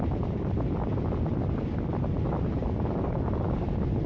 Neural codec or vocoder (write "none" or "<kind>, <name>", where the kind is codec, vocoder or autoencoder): none